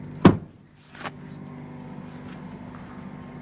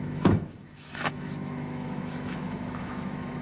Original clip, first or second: first